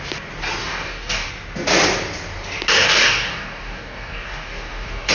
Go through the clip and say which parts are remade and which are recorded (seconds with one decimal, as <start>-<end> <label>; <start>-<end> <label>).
0.0-0.6 recorded; 0.6-1.3 remade; 1.3-2.8 recorded; 2.8-5.1 remade